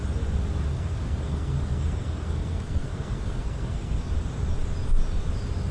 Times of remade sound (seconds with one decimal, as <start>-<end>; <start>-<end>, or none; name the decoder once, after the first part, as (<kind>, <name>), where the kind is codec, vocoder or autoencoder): 0.7-4.1 (codec, SNAC)